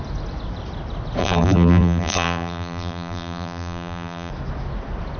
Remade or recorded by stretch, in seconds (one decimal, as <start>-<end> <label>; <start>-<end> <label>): 0.0-1.2 recorded; 1.2-4.3 remade; 4.3-5.2 recorded